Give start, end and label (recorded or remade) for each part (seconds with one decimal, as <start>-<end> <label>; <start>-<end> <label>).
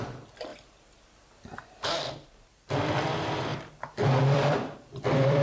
0.0-0.5 remade; 0.5-1.9 recorded; 1.9-5.4 remade